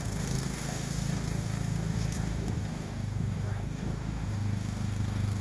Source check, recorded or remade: remade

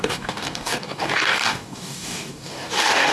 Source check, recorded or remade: remade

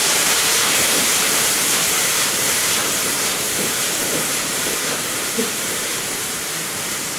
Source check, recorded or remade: remade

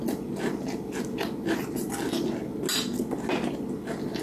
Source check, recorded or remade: recorded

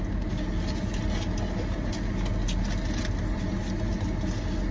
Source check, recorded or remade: recorded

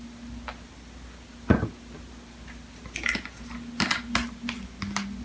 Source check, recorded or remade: recorded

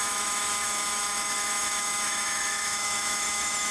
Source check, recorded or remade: remade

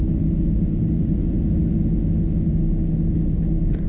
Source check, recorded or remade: recorded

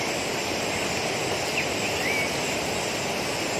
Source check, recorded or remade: recorded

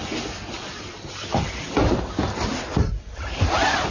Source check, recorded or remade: recorded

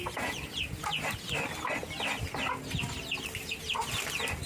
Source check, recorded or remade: recorded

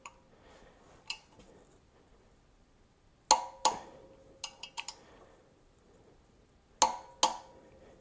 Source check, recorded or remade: recorded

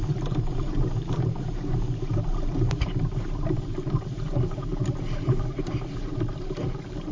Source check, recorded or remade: remade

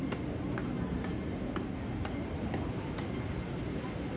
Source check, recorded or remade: recorded